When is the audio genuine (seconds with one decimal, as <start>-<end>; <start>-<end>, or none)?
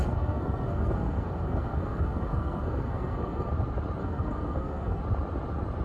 3.5-4.0; 5.0-5.8